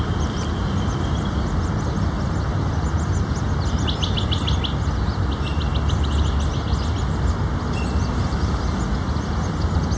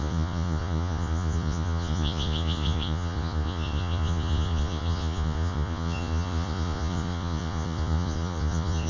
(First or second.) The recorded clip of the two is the first